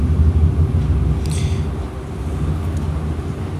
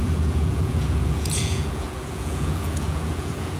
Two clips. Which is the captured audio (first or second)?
first